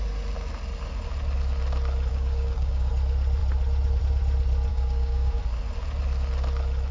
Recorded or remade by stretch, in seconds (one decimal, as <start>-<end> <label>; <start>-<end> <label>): 0.0-2.1 recorded; 2.1-2.9 remade; 2.9-4.7 recorded; 4.7-5.4 remade; 5.4-6.9 recorded